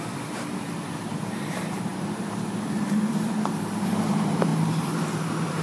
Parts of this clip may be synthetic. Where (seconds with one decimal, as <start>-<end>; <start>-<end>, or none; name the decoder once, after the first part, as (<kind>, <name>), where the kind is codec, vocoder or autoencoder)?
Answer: 0.0-5.6 (vocoder, BigVGAN v2)